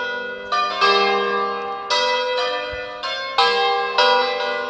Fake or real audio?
real